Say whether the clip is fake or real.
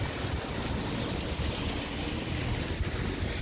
real